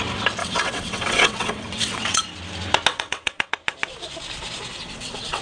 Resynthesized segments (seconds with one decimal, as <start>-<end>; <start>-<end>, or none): 0.4-2.2; 2.9-3.5; 4.8-5.4